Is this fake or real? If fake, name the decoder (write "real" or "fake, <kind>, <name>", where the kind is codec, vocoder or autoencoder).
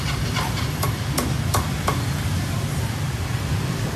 fake, vocoder, BigVGAN v2